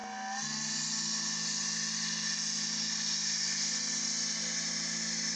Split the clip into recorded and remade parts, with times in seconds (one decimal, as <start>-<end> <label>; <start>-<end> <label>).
0.0-5.4 recorded

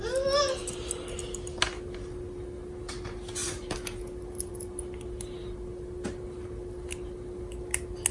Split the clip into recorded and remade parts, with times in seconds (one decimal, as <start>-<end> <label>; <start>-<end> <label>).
0.0-8.1 recorded

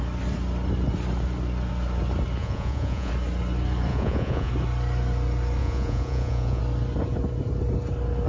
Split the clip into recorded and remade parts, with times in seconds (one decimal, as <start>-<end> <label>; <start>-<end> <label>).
0.0-2.4 recorded; 2.4-3.1 remade; 3.1-3.9 recorded; 3.9-4.5 remade; 4.5-5.6 recorded; 5.6-6.6 remade; 6.6-8.3 recorded

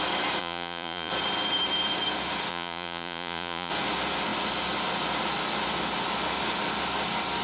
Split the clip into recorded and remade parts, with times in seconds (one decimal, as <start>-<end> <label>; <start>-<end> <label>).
0.0-0.4 recorded; 0.4-1.1 remade; 1.1-2.5 recorded; 2.5-3.7 remade; 3.7-7.4 recorded

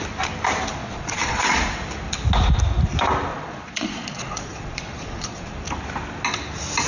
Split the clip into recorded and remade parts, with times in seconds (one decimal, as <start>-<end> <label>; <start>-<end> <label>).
0.0-0.8 recorded; 0.8-1.6 remade; 1.6-3.3 recorded; 3.3-5.5 remade; 5.5-6.9 recorded

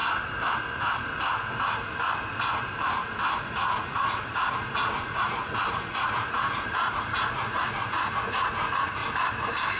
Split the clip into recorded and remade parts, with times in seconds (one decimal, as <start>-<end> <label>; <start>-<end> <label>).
0.0-3.4 recorded; 3.4-9.0 remade; 9.0-9.8 recorded